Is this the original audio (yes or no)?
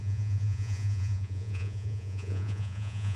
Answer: no